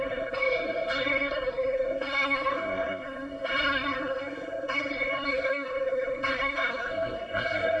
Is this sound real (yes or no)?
no